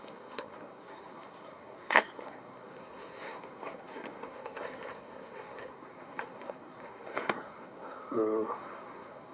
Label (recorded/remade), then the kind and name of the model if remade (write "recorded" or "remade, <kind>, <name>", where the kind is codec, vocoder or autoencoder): remade, codec, SNAC